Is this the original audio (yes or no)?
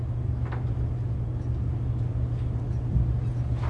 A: yes